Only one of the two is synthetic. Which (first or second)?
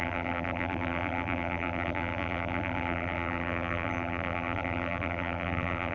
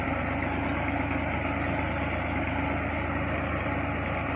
first